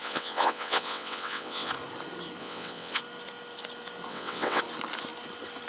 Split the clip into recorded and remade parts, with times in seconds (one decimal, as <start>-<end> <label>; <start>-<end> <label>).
0.0-1.7 remade; 1.7-2.4 recorded; 2.4-3.0 remade; 3.0-4.1 recorded; 4.1-4.6 remade; 4.6-5.7 recorded